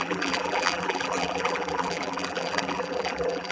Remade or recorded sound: remade